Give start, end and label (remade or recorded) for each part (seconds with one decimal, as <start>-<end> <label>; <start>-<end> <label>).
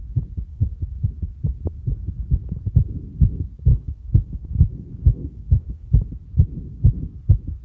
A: 0.0-0.5 recorded; 0.5-1.1 remade; 1.1-3.7 recorded; 3.7-5.9 remade; 5.9-7.6 recorded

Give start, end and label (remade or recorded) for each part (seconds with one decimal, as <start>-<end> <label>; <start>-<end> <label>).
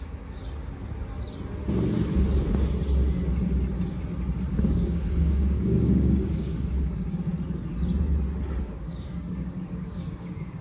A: 0.0-0.4 remade; 0.4-4.6 recorded; 4.6-7.3 remade; 7.3-8.6 recorded; 8.6-10.6 remade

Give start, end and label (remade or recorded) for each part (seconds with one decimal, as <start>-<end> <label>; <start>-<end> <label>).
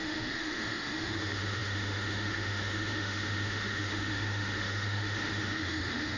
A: 0.0-6.2 remade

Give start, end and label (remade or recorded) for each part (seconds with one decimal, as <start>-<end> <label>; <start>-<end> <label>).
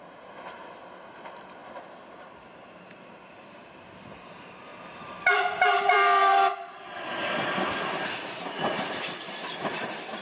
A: 0.0-1.6 remade; 1.6-2.2 recorded; 2.2-10.2 remade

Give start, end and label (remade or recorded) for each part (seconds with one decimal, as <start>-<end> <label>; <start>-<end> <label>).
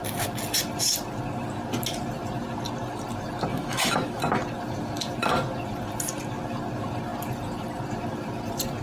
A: 0.0-3.5 recorded; 3.5-4.2 remade; 4.2-8.8 recorded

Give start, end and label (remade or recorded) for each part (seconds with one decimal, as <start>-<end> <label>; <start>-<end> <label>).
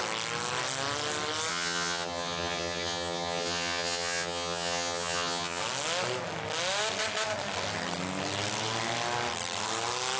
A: 0.0-1.5 recorded; 1.5-5.6 remade; 5.6-10.2 recorded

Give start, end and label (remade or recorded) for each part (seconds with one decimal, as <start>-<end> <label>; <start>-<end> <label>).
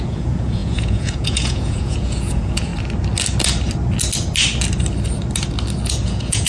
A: 0.0-2.7 remade; 2.7-5.9 recorded; 5.9-6.5 remade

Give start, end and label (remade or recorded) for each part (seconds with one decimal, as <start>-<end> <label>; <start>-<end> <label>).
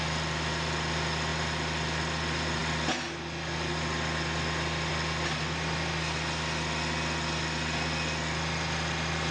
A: 0.0-9.3 recorded